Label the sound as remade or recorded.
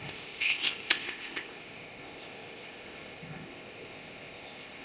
remade